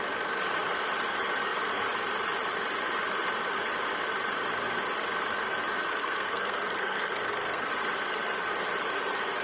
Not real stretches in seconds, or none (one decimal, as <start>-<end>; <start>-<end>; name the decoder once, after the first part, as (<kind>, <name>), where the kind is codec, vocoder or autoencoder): 6.0-7.7 (codec, SNAC)